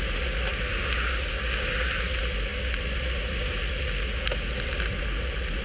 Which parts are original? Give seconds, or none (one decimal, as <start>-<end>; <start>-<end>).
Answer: 0.0-5.6